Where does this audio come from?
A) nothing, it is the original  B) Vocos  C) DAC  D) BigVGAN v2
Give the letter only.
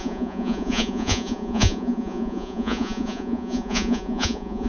B